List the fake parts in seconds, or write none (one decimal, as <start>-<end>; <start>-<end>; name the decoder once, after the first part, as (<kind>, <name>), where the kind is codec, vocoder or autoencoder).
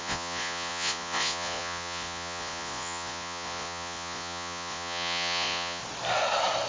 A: 0.0-5.8 (vocoder, Vocos)